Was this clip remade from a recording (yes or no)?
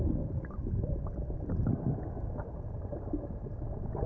no